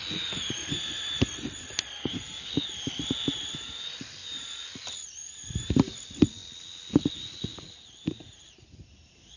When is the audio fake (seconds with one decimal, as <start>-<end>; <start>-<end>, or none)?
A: none